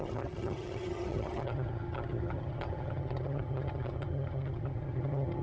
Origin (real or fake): fake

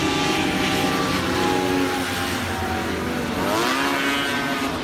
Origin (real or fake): real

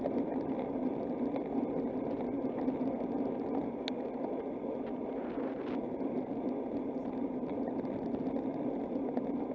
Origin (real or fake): real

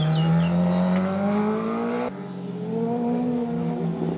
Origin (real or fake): real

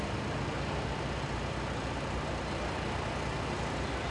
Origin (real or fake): real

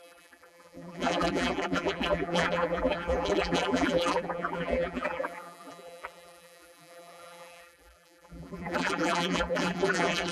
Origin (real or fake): fake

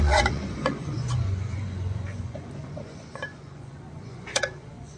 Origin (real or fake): fake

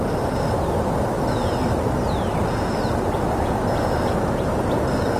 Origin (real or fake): real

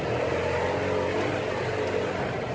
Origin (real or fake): real